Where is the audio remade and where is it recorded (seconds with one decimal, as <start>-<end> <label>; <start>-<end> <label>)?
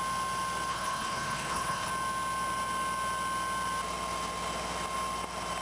0.0-0.7 recorded; 0.7-1.9 remade; 1.9-5.6 recorded